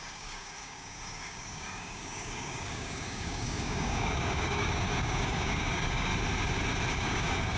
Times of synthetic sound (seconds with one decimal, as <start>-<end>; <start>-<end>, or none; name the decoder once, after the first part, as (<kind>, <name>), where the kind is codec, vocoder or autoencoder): 0.0-6.1 (codec, DAC); 6.9-7.6